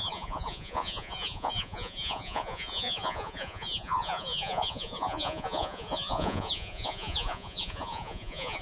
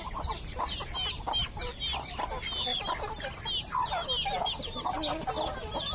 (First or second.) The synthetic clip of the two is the first